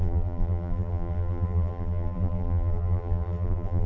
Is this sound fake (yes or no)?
yes